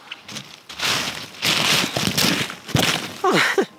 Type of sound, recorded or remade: recorded